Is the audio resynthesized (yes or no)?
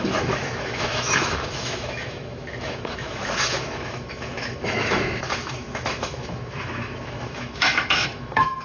yes